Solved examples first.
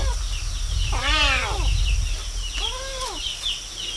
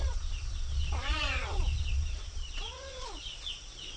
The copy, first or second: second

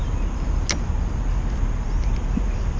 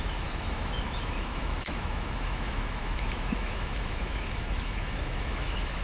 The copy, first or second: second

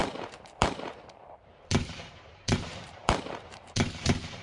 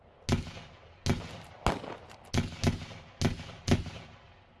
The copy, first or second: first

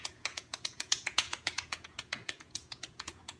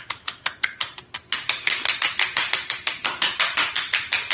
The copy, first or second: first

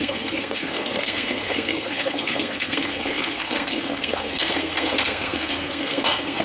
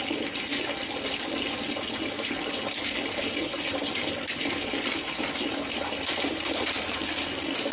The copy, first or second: first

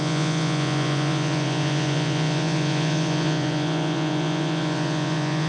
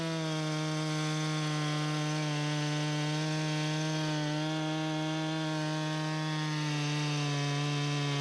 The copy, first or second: first